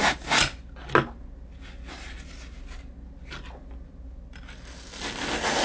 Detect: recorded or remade recorded